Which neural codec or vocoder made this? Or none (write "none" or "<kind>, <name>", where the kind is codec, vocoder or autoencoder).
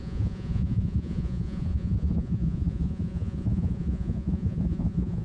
vocoder, Vocos